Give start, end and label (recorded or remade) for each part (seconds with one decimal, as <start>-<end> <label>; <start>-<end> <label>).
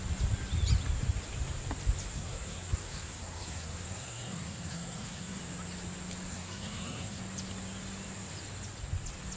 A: 0.0-2.1 recorded; 2.1-5.4 remade; 5.4-6.3 recorded; 6.3-7.2 remade; 7.2-9.4 recorded